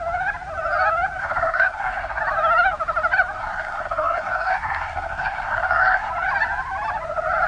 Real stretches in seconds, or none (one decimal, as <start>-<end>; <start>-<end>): 0.0-1.2; 2.2-3.4; 6.1-7.5